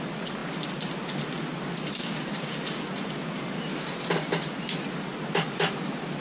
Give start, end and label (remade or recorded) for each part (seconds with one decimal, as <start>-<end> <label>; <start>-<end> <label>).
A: 0.0-6.2 recorded